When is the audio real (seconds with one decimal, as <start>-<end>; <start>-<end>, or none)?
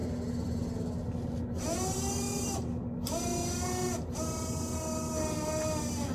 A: 0.0-6.1